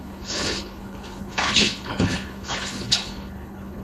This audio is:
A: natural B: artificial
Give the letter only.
B